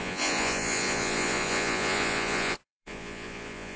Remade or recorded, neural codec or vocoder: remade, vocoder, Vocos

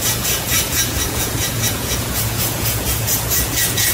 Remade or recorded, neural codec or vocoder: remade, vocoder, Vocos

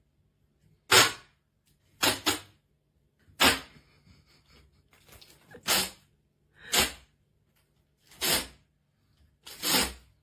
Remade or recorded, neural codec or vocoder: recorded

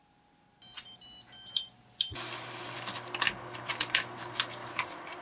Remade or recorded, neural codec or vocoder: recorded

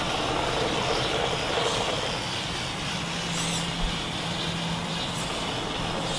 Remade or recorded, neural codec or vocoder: recorded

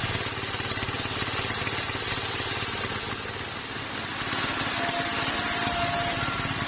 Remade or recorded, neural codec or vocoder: recorded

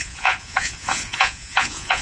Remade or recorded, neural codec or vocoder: remade, vocoder, Vocos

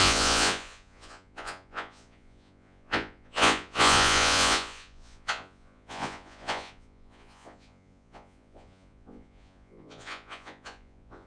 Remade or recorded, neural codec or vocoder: remade, vocoder, Vocos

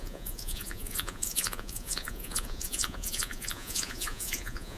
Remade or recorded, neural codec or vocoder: remade, vocoder, Vocos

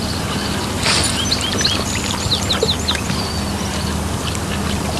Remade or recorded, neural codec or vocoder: recorded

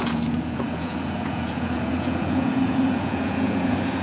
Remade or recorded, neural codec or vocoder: remade, vocoder, Vocos